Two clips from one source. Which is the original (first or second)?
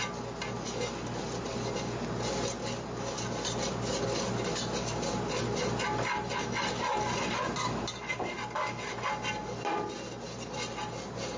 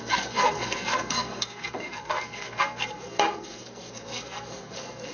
first